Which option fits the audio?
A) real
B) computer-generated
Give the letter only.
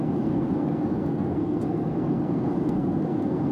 B